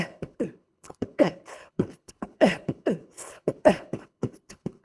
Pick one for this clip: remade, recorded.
remade